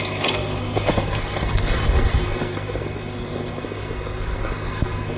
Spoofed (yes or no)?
yes